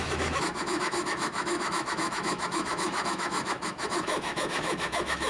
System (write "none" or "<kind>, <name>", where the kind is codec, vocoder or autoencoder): autoencoder, DAC-VAE